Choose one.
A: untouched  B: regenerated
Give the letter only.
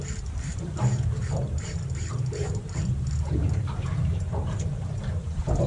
B